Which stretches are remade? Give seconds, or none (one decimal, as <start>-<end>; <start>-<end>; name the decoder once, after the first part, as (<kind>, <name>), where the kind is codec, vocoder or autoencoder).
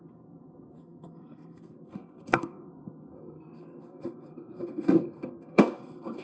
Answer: 0.0-6.2 (codec, SNAC)